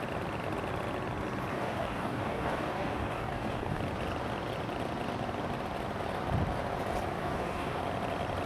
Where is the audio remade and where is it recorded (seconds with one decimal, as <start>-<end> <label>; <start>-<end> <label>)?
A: 0.0-1.5 recorded; 1.5-3.8 remade; 3.8-7.2 recorded; 7.2-7.8 remade; 7.8-8.5 recorded

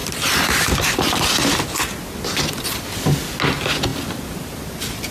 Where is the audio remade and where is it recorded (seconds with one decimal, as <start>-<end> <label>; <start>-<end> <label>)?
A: 0.0-1.5 remade; 1.5-5.1 recorded

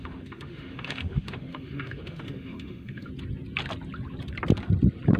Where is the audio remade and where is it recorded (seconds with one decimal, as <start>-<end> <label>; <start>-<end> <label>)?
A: 0.0-3.1 remade; 3.1-5.2 recorded

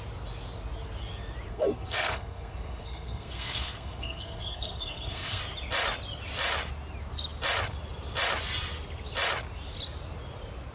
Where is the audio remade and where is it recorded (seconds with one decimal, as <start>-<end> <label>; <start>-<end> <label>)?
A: 0.0-1.5 recorded; 1.5-5.4 remade; 5.4-10.7 recorded

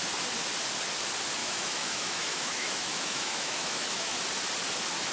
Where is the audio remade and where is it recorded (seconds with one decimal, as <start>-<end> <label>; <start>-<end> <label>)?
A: 0.0-1.4 recorded; 1.4-4.2 remade; 4.2-5.1 recorded

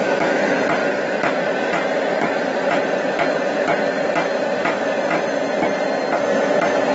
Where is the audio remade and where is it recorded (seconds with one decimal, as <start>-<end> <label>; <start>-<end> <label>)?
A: 0.0-0.8 recorded; 0.8-4.9 remade; 4.9-6.9 recorded